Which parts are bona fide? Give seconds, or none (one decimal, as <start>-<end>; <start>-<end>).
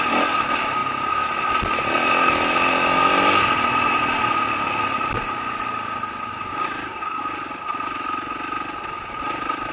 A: 0.0-6.3; 7.2-9.7